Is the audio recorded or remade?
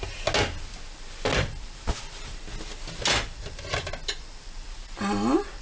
recorded